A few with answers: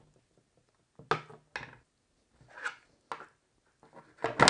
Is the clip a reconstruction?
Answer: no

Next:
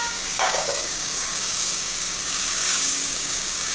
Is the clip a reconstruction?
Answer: yes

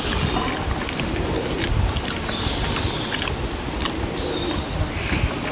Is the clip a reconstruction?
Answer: no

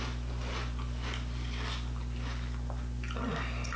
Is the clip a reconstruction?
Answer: no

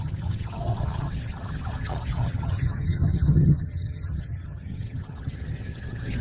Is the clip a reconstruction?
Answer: yes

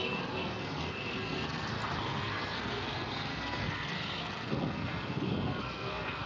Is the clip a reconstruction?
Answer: yes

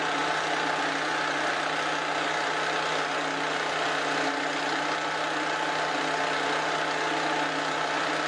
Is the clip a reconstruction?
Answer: no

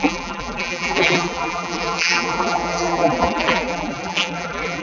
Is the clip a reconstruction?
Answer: yes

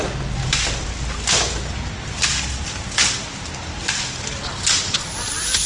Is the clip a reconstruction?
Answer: no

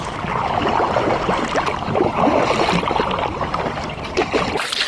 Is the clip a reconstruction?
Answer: no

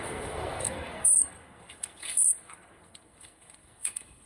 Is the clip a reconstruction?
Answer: yes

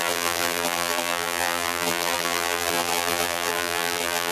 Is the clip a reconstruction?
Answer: yes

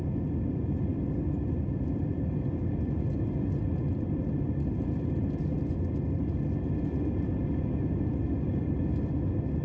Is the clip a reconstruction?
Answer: no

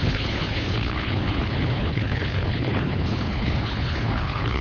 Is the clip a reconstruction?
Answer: yes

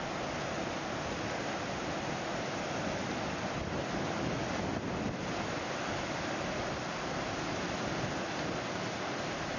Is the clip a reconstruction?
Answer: no